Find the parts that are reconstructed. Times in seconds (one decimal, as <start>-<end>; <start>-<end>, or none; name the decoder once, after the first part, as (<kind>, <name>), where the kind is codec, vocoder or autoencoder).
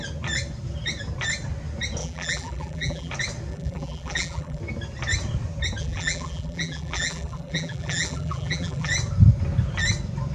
2.0-3.1 (vocoder, BigVGAN v2); 3.5-4.6; 5.8-8.9